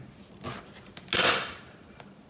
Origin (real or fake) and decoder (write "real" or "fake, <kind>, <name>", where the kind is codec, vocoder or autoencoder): real